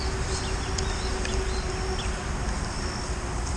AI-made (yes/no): no